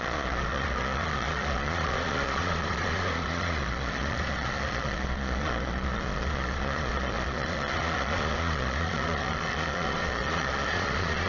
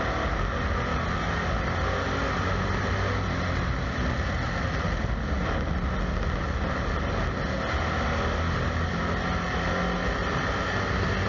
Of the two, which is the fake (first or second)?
first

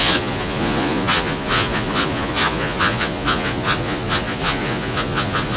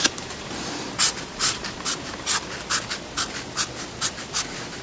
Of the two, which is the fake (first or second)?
first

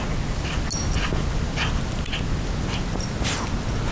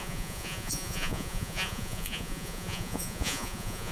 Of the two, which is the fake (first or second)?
second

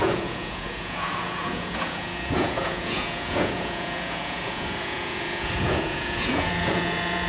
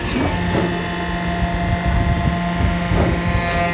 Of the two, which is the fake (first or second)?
first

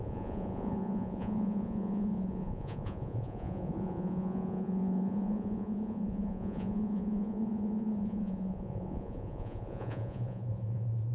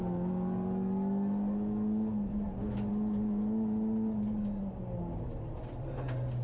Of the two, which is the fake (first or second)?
first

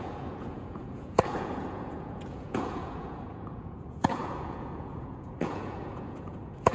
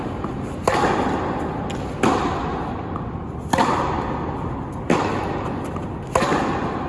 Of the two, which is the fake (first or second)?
first